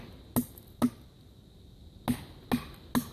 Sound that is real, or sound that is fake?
real